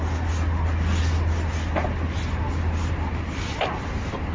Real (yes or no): yes